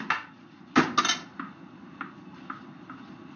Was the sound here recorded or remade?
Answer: recorded